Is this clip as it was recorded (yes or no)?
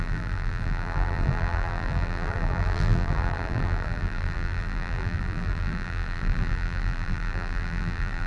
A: no